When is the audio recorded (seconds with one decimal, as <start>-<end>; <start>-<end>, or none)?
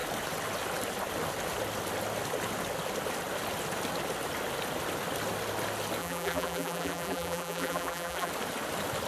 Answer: 0.0-6.0; 8.3-9.1